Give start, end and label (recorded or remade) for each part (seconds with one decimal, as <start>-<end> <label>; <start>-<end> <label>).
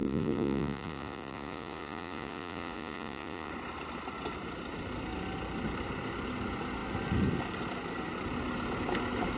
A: 0.0-3.5 remade; 3.5-9.4 recorded